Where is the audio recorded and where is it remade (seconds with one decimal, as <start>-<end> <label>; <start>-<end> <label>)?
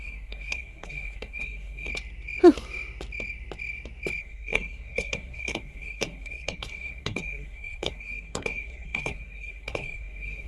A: 0.0-1.9 remade; 1.9-4.2 recorded; 4.2-10.5 remade